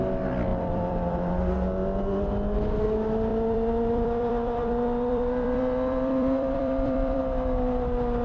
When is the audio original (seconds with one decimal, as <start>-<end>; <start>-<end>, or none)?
0.0-0.5; 1.3-3.3; 7.2-8.2